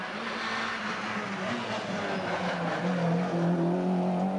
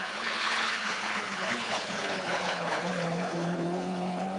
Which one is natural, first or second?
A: first